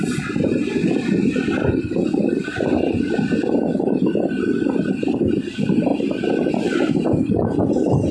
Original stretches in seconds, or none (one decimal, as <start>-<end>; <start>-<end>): 0.0-0.8; 1.4-5.9; 6.5-8.1